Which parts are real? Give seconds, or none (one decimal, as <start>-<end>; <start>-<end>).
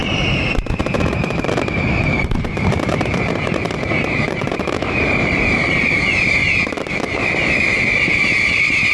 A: 0.0-0.7; 6.4-6.9